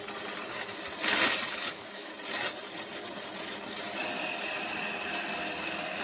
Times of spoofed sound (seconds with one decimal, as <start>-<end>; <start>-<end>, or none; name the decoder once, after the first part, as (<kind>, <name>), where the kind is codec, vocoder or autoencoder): 1.5-2.1 (autoencoder, DAC-VAE)

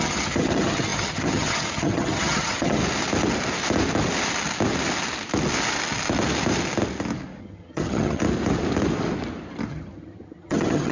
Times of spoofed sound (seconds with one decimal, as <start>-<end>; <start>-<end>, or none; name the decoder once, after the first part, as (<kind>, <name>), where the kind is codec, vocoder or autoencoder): 0.0-2.8 (vocoder, HiFi-GAN); 7.4-8.2; 9.7-10.9

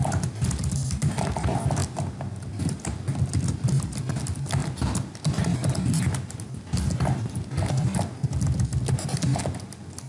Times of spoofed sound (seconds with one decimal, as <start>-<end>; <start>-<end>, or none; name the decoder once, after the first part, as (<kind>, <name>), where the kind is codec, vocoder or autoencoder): none

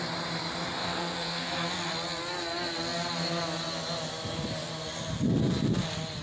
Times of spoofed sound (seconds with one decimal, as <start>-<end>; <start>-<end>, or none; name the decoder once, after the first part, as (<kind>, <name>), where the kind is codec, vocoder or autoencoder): 0.8-1.5 (codec, SNAC)

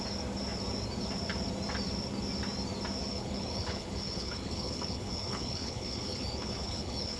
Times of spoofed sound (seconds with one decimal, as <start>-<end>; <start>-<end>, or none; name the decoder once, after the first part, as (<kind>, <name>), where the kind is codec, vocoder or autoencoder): 3.1-7.2 (codec, HILCodec)

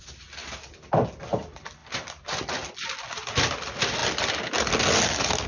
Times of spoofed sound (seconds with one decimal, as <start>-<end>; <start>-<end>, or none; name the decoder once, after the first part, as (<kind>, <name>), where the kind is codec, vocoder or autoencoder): none